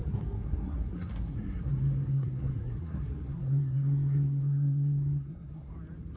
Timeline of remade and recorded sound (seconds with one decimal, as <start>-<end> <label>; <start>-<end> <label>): 0.0-1.7 remade; 1.7-2.1 recorded; 2.1-5.7 remade; 5.7-6.2 recorded